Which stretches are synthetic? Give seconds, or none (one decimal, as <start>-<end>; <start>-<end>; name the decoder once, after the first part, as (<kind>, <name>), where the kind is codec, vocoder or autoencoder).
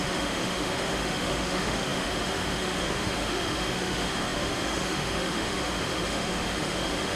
0.0-7.2 (autoencoder, DAC-VAE)